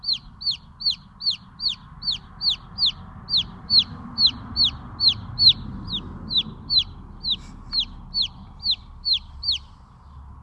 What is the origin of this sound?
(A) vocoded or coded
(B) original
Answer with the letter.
B